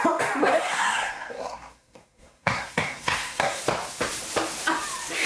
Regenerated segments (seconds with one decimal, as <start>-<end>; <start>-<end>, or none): 0.4-3.6